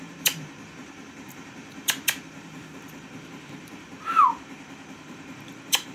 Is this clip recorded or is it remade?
remade